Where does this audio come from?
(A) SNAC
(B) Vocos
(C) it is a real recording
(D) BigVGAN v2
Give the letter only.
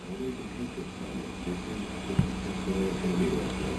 C